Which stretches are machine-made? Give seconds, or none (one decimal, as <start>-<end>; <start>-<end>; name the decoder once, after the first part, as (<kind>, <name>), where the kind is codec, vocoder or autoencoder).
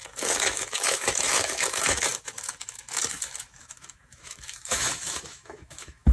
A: 0.0-6.1 (autoencoder, DAC-VAE)